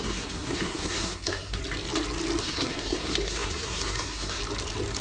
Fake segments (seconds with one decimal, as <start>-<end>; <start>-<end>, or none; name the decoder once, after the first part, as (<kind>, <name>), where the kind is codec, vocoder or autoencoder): 0.0-1.6 (codec, SNAC); 2.4-4.4